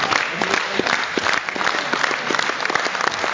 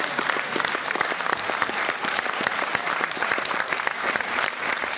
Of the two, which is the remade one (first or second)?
second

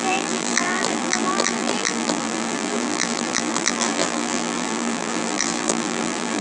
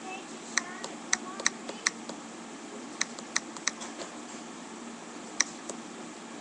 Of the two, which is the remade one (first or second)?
first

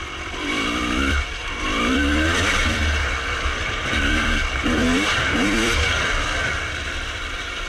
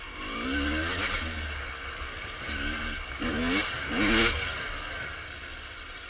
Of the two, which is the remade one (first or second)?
first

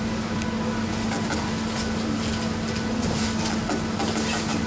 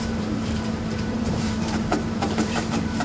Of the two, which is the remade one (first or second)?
second